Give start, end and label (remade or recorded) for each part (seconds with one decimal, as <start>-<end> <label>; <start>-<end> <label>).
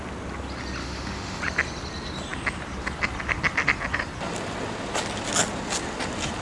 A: 0.0-0.8 recorded; 0.8-1.4 remade; 1.4-6.4 recorded